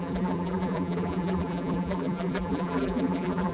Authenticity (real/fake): fake